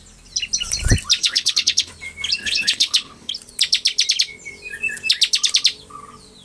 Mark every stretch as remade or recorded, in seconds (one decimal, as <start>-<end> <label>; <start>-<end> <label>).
0.0-1.2 recorded; 1.2-1.9 remade; 1.9-2.4 recorded; 2.4-3.3 remade; 3.3-6.4 recorded